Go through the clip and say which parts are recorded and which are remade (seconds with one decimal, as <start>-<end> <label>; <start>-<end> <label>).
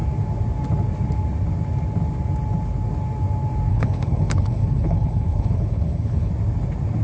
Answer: 0.0-3.7 recorded; 3.7-6.3 remade; 6.3-7.0 recorded